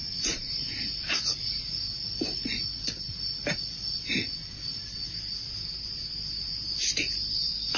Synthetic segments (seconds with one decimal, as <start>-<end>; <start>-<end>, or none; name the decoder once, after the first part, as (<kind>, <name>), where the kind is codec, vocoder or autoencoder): 0.0-0.5 (vocoder, Vocos)